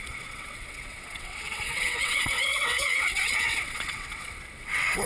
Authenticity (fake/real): fake